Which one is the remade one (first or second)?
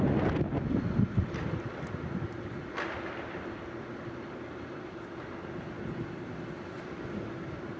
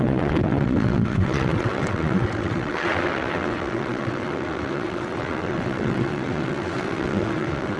second